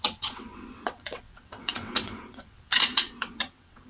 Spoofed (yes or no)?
yes